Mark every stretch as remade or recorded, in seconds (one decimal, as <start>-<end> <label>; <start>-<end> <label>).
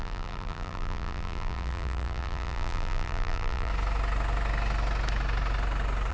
0.0-3.7 remade; 3.7-6.1 recorded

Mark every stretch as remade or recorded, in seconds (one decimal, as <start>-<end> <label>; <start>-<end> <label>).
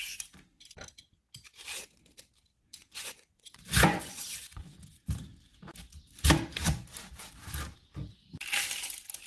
0.0-2.7 recorded; 2.7-4.7 remade; 4.7-9.3 recorded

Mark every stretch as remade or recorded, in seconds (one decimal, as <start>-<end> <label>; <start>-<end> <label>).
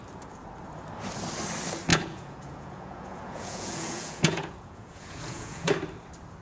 0.0-1.9 recorded; 1.9-5.7 remade; 5.7-6.4 recorded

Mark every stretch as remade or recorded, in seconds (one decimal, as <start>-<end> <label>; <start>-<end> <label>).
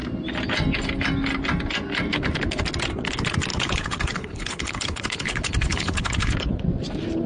0.0-3.5 recorded; 3.5-6.6 remade; 6.6-7.3 recorded